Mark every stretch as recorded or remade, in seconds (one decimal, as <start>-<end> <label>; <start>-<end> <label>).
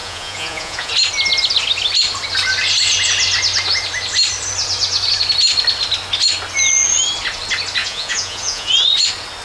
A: 0.0-0.9 remade; 0.9-7.8 recorded; 7.8-8.7 remade; 8.7-9.4 recorded